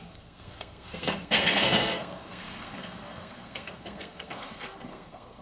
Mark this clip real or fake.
fake